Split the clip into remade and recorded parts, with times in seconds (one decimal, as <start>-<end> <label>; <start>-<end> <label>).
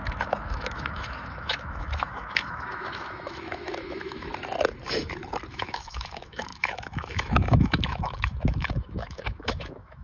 0.0-4.3 remade; 4.3-5.5 recorded; 5.5-10.0 remade